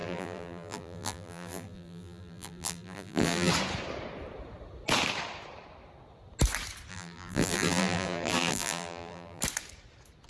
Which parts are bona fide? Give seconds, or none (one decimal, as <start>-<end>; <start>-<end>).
3.5-6.9; 9.4-10.3